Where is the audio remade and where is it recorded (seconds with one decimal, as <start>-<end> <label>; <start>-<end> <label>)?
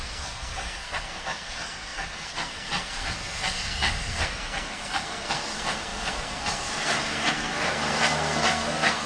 0.0-9.1 remade